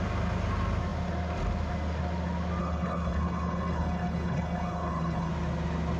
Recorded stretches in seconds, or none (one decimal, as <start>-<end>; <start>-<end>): 0.0-2.6; 5.3-6.0